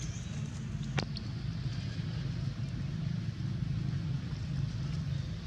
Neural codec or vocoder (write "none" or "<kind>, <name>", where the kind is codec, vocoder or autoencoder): none